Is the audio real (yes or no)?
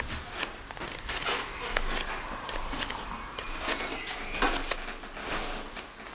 yes